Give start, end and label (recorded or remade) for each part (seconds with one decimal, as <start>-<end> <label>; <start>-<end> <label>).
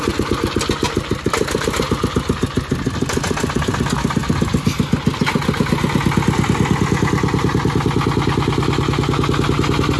0.0-10.0 recorded